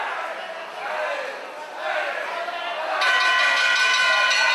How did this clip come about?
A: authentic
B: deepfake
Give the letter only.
A